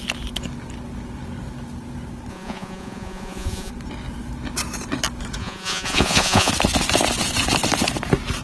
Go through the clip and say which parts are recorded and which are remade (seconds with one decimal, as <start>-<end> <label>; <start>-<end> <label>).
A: 0.0-2.3 recorded; 2.3-3.7 remade; 3.7-5.4 recorded; 5.4-6.5 remade; 6.5-8.4 recorded